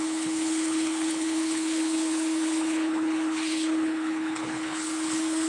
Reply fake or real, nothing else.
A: fake